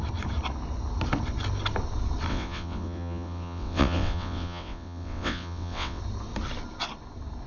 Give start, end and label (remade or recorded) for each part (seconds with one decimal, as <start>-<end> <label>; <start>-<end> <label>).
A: 0.0-2.3 recorded; 2.3-6.0 remade; 6.0-7.5 recorded